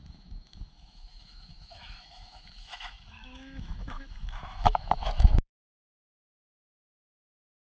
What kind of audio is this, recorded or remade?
remade